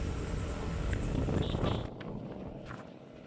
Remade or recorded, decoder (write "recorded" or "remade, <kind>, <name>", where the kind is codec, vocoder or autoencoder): recorded